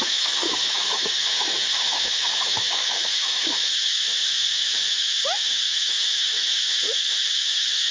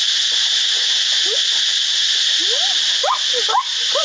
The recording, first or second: second